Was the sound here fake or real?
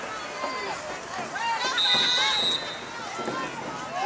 real